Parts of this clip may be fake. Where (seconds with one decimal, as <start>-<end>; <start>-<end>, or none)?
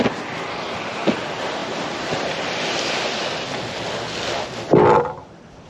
1.6-2.7